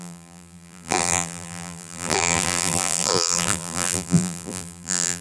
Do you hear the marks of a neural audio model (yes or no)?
yes